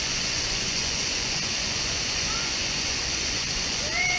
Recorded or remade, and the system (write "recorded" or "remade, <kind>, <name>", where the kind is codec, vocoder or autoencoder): remade, vocoder, Vocos